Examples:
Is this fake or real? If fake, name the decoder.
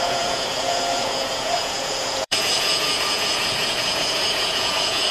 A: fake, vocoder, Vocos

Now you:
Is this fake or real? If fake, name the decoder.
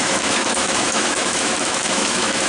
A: fake, autoencoder, DAC-VAE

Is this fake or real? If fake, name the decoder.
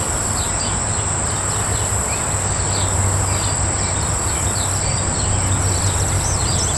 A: real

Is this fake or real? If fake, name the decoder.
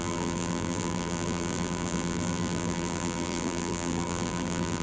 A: fake, vocoder, BigVGAN v2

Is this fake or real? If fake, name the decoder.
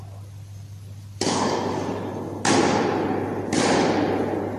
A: real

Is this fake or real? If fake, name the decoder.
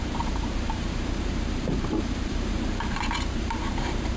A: fake, vocoder, BigVGAN v2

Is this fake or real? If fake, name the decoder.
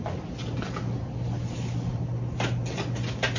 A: real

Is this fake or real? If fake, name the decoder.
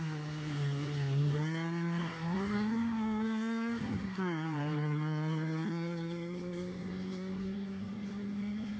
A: fake, codec, SNAC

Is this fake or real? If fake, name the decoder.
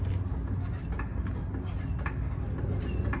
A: real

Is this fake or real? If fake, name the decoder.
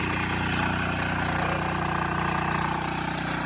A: real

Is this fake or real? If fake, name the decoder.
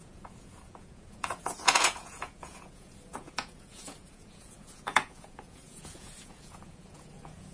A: fake, vocoder, Vocos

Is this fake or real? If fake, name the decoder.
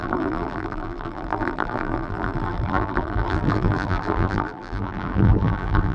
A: fake, vocoder, BigVGAN v2